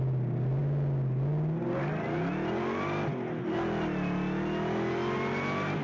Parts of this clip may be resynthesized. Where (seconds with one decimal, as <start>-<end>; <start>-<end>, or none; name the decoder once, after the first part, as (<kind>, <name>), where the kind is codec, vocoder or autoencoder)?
none